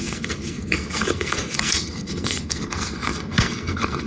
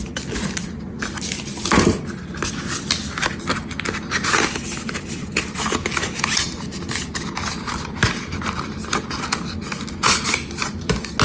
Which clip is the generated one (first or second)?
first